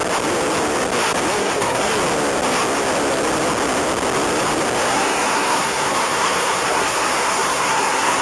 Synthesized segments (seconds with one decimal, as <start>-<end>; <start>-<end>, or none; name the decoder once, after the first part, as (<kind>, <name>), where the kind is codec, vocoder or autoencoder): 1.4-1.9 (codec, SNAC); 4.9-8.2